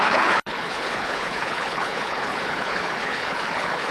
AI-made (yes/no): yes